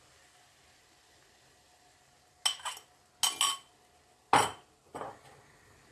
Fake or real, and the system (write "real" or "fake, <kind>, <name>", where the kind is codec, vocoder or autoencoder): real